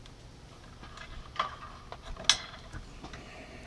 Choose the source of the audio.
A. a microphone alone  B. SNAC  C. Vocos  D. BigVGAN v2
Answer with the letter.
A